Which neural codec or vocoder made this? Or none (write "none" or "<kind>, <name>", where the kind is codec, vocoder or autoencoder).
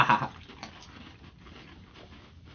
none